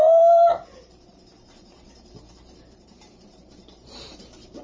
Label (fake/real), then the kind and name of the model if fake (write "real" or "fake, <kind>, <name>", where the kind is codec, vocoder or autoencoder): fake, vocoder, BigVGAN v2